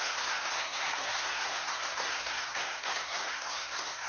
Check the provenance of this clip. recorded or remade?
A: remade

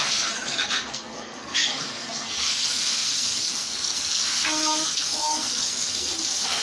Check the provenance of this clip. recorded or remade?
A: remade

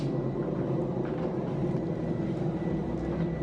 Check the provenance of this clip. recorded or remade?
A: recorded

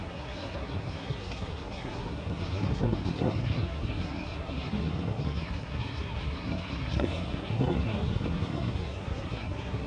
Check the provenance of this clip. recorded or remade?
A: remade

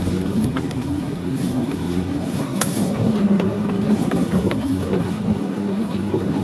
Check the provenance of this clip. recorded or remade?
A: remade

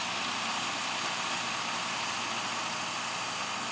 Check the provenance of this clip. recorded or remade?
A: recorded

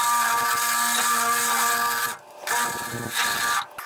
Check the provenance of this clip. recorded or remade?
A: recorded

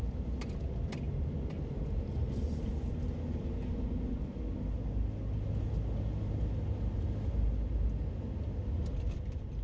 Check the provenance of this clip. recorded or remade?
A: recorded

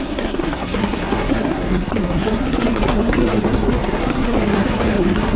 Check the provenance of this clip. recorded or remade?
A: remade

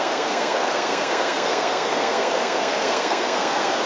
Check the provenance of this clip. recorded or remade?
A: remade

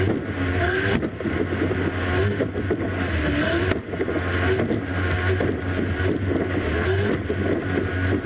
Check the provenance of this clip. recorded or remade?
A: recorded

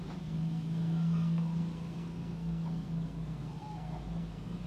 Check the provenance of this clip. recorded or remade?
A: remade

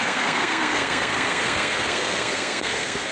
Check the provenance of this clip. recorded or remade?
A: remade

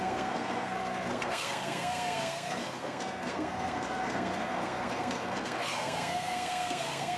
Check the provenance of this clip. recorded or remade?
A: remade